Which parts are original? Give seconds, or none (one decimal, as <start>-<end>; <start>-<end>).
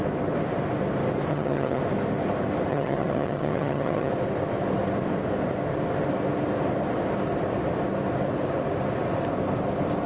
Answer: 0.0-1.3; 1.8-2.7; 4.1-10.1